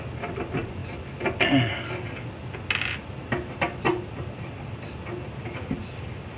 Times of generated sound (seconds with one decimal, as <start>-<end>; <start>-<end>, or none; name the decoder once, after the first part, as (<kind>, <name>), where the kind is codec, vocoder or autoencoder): none